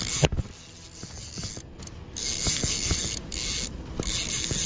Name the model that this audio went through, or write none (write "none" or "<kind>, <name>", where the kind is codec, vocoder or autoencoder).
none